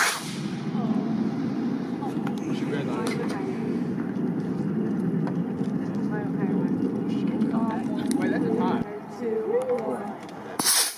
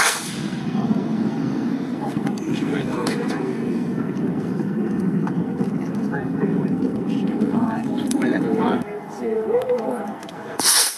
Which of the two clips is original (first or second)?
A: first